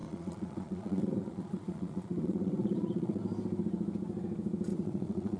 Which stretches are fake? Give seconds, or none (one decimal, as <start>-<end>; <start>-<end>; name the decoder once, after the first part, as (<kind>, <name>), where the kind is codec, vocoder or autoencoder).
0.0-3.2 (vocoder, Vocos); 4.7-5.4